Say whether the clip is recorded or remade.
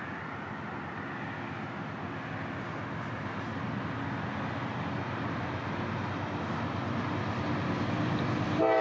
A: recorded